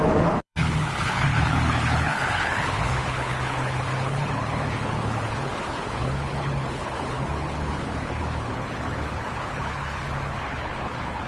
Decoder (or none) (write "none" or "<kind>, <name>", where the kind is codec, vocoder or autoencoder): codec, HILCodec